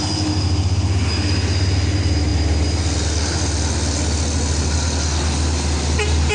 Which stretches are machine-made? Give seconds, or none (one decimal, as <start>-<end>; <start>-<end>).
none